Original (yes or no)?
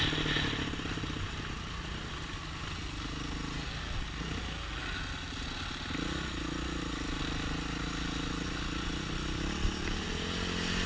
yes